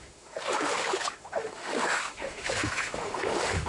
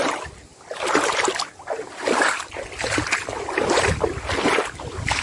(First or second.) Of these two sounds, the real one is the second